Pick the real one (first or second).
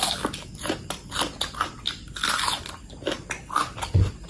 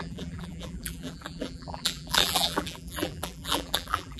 first